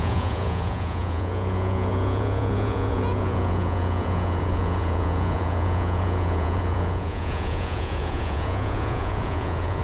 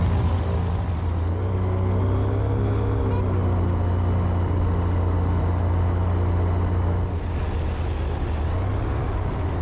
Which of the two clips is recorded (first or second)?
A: second